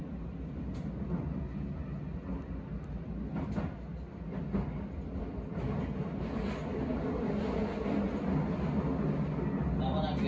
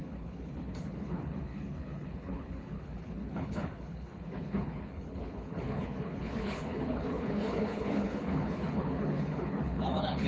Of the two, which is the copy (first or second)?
second